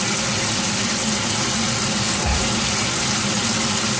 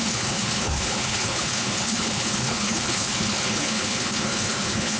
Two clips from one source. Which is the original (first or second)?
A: first